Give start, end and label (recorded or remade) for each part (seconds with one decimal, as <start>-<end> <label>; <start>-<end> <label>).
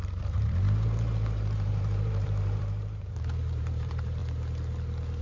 0.0-4.2 remade; 4.2-5.2 recorded